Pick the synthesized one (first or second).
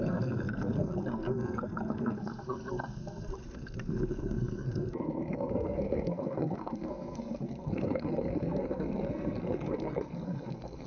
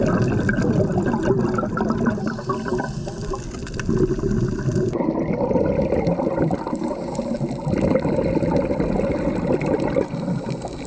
first